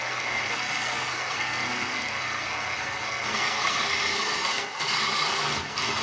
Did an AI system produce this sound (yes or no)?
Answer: yes